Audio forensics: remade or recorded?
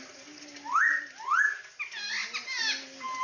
recorded